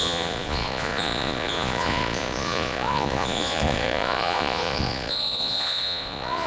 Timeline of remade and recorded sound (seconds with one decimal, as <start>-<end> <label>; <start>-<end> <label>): 0.0-6.5 remade